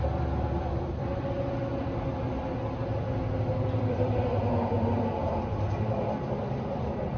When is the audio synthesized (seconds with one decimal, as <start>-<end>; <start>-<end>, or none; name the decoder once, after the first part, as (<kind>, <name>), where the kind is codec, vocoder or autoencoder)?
0.0-1.1 (vocoder, BigVGAN v2); 3.5-7.2